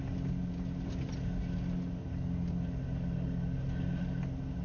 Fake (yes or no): no